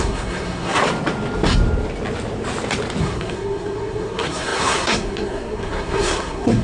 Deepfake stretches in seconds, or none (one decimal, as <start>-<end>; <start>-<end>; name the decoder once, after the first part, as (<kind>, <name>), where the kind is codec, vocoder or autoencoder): 0.0-0.8 (codec, SNAC); 3.0-6.6